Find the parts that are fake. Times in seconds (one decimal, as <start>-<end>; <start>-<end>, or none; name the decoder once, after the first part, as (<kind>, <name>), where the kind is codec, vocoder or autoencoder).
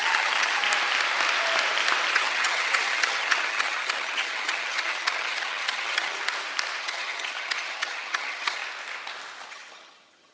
0.0-0.6 (vocoder, HiFi-GAN); 2.1-6.2; 6.8-8.6; 9.5-10.3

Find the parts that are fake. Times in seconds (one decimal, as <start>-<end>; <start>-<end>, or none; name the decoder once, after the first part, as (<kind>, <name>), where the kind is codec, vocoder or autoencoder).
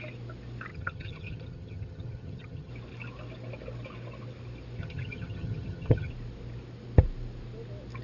0.7-2.7 (vocoder, HiFi-GAN); 4.8-6.1